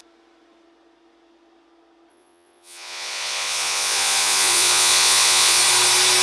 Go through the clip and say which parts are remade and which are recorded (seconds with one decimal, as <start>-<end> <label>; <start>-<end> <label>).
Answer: 0.0-2.1 recorded; 2.1-5.6 remade; 5.6-6.2 recorded